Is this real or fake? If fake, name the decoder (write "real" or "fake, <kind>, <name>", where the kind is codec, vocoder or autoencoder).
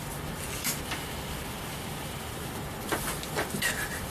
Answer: real